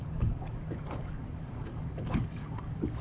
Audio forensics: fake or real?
fake